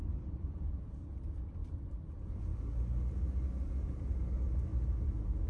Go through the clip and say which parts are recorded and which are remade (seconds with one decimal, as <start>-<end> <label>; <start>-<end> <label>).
0.0-5.5 recorded